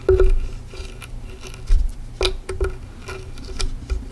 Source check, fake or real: real